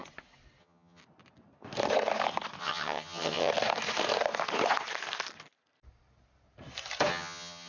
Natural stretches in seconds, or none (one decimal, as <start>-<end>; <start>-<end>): 0.0-0.6; 1.0-2.6; 3.5-7.1